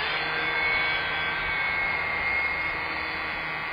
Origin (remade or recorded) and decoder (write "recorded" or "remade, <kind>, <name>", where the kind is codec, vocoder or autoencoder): recorded